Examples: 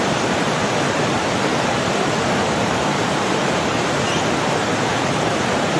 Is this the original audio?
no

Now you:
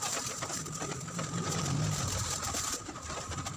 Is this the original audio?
no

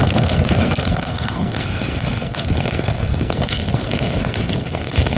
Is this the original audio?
no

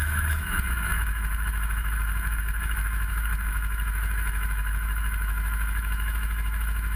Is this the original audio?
no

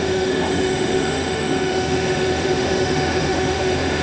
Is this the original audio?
no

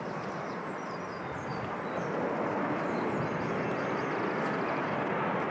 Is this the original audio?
yes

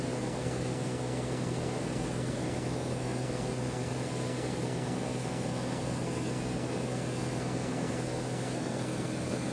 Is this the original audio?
no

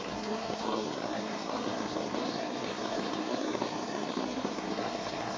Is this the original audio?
no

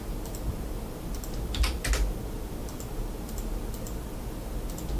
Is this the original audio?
yes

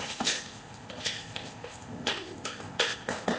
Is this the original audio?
no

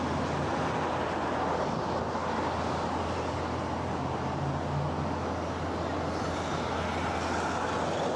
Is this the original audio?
yes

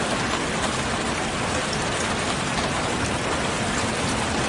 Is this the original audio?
yes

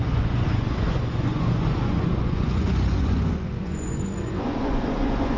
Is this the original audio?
no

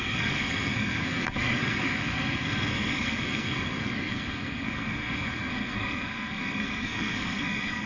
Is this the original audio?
no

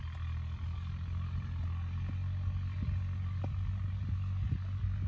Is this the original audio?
yes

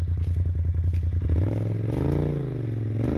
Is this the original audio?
yes